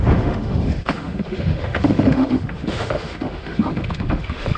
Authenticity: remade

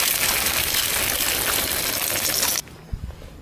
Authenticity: recorded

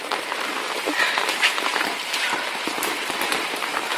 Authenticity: remade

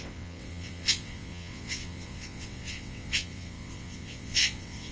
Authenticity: remade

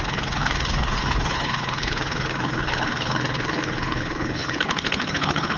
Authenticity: remade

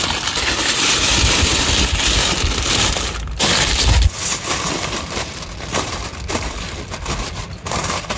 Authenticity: recorded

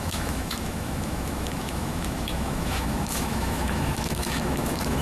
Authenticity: remade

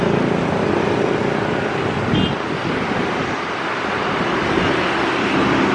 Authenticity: recorded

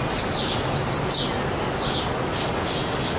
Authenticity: recorded